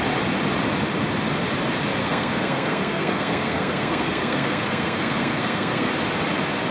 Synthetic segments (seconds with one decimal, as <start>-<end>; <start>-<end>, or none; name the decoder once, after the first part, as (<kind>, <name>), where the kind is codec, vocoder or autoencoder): 2.0-5.9 (codec, SNAC)